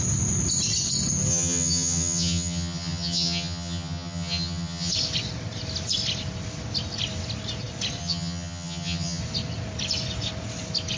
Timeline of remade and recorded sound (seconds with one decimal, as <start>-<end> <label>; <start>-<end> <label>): 0.0-1.3 recorded; 1.3-4.9 remade; 4.9-8.0 recorded; 8.0-9.2 remade; 9.2-11.0 recorded